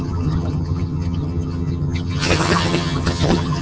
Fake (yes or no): yes